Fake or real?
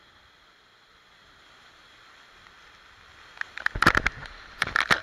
real